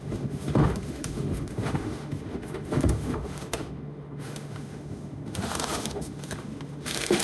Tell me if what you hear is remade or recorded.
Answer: remade